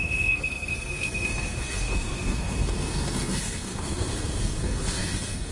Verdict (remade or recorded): remade